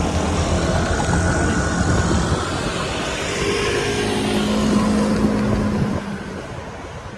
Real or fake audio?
real